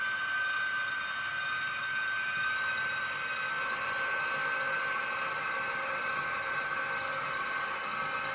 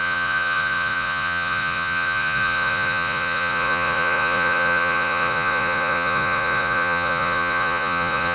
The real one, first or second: first